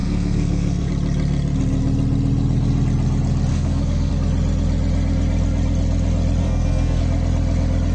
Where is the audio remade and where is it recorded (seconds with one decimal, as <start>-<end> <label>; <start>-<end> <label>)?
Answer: 0.0-0.9 remade; 0.9-3.5 recorded; 3.5-4.1 remade; 4.1-6.4 recorded; 6.4-7.0 remade; 7.0-7.9 recorded